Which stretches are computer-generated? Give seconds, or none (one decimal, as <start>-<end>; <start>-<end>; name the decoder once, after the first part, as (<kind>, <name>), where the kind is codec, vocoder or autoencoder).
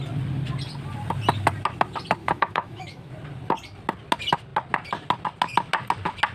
2.2-3.1 (autoencoder, DAC-VAE)